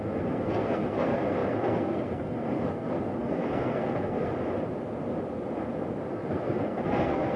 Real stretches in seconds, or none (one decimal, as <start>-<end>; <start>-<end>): 4.3-6.1